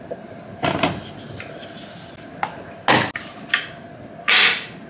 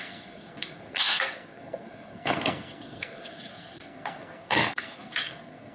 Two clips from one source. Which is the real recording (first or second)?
first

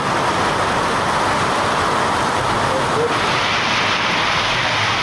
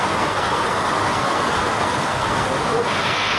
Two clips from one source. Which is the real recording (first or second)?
first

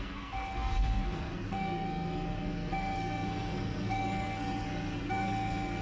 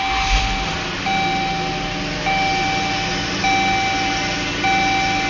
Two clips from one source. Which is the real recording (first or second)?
second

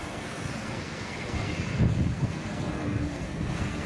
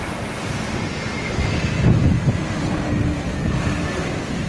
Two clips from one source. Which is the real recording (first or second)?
second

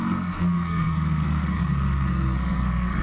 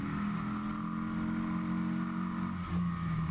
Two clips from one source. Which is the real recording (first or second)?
second